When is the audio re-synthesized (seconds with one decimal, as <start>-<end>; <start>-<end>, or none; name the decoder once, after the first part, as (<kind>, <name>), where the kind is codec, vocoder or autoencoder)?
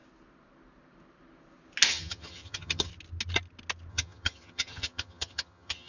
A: 1.9-2.9 (vocoder, HiFi-GAN); 3.9-5.9